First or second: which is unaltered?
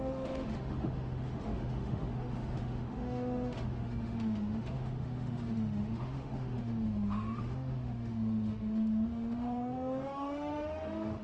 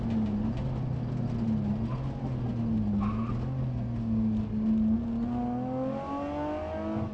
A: second